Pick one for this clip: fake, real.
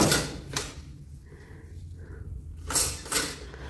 real